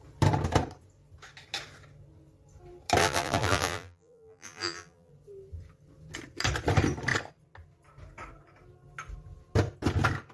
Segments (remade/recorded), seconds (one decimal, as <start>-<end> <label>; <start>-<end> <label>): 0.0-3.0 recorded; 3.0-5.1 remade; 5.1-10.3 recorded